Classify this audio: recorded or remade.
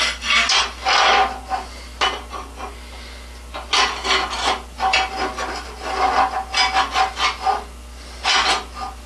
recorded